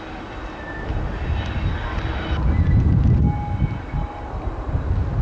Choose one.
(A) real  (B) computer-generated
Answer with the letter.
A